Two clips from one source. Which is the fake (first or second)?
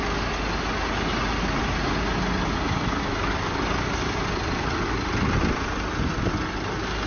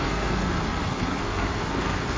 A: second